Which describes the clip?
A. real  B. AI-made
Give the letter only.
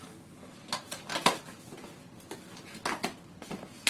A